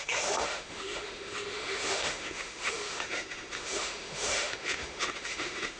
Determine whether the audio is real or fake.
fake